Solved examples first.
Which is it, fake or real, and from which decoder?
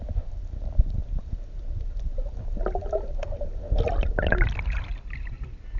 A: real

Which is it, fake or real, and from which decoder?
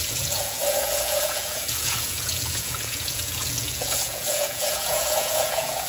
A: fake, vocoder, Vocos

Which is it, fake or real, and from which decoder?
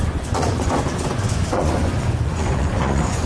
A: fake, vocoder, Vocos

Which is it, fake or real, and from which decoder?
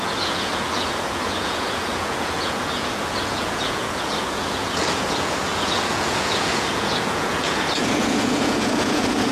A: fake, vocoder, Vocos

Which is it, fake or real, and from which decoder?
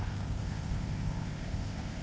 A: fake, codec, ZipCodec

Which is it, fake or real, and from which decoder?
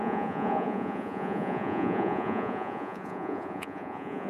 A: fake, vocoder, Vocos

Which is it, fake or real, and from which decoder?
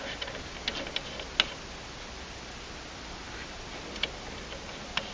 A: real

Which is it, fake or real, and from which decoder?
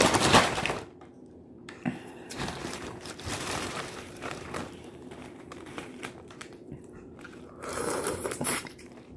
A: fake, vocoder, BigVGAN v2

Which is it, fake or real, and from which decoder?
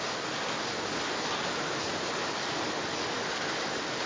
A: real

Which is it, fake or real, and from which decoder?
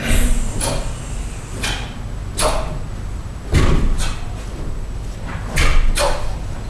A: real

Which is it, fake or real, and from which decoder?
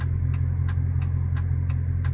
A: real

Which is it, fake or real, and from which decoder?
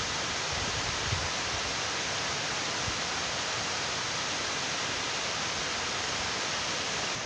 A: real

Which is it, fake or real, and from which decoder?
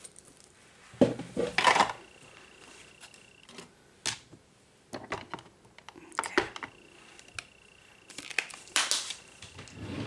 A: real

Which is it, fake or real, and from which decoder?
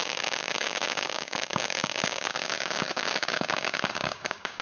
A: fake, codec, DAC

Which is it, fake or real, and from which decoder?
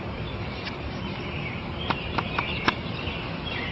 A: fake, vocoder, BigVGAN v2